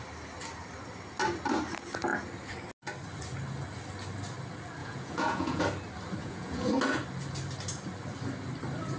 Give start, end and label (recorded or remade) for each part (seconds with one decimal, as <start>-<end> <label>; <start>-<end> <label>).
0.0-4.8 recorded; 4.8-5.6 remade; 5.6-6.2 recorded; 6.2-6.7 remade; 6.7-9.0 recorded